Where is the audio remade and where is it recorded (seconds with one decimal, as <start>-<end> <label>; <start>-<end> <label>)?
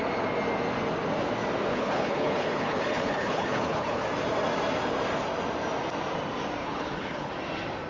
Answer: 0.0-1.7 recorded; 1.7-4.0 remade; 4.0-6.6 recorded; 6.6-7.3 remade; 7.3-7.9 recorded